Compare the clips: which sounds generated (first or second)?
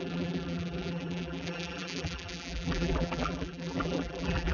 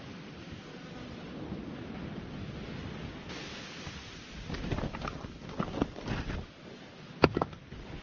first